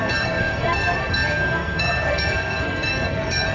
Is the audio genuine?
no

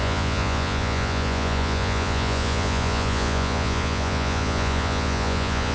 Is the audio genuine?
no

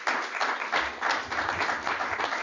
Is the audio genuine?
yes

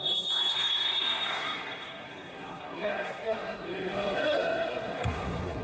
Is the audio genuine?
no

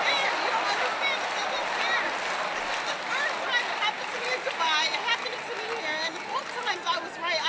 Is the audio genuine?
yes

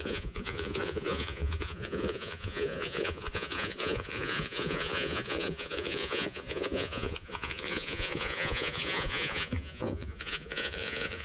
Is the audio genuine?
no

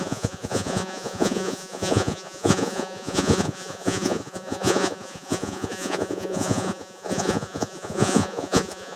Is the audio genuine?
no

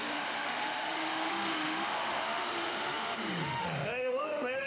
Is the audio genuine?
no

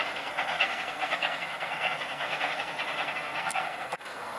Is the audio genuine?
no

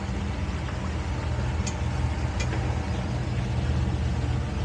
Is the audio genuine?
yes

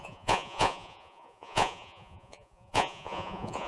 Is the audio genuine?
no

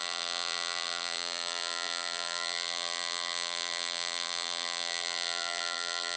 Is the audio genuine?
no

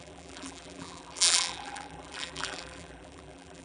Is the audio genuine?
no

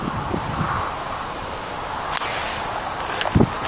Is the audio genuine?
yes